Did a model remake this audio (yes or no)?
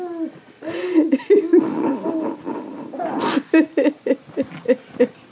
no